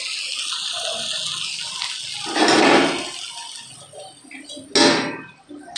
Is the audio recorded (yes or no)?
yes